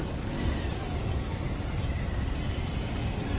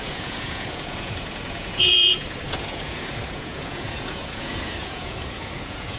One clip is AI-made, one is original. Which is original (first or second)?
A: first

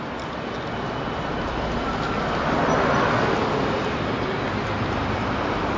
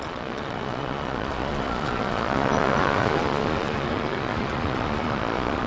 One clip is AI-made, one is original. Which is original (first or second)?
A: first